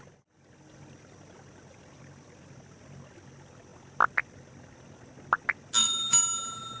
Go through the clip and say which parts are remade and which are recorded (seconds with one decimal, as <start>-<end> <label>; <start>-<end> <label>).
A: 0.0-6.8 recorded